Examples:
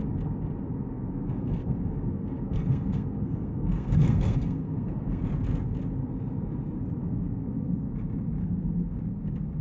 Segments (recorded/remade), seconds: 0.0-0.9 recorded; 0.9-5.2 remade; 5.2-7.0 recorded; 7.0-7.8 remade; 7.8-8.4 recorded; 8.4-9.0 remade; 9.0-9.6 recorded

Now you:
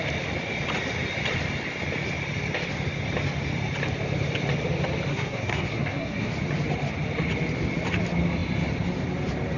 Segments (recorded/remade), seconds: 0.0-5.1 recorded; 5.1-6.3 remade; 6.3-9.6 recorded

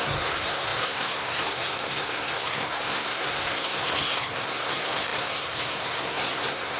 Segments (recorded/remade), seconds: 0.0-6.8 remade